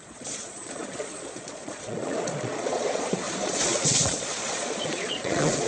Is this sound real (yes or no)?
no